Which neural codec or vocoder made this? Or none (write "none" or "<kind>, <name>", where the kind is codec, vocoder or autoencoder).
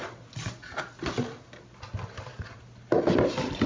none